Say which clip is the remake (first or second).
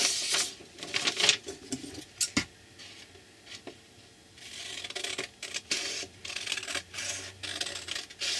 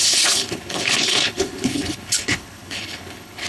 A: second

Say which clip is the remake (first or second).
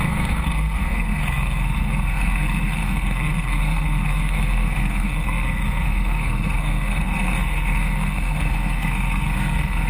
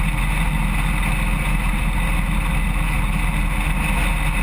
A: first